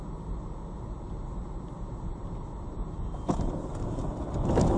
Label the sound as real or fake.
real